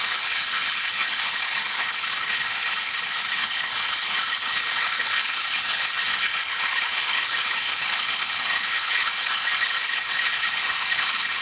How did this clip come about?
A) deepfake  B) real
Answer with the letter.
A